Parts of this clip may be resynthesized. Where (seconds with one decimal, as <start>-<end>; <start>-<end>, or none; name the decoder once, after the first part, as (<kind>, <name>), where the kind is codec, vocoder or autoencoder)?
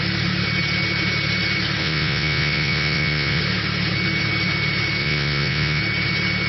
1.8-3.4 (vocoder, Vocos); 5.0-5.8